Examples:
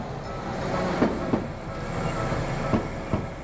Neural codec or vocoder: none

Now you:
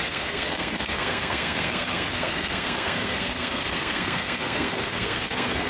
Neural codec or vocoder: codec, SNAC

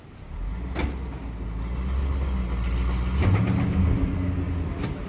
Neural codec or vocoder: none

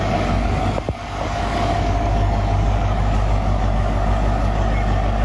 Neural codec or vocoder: codec, DAC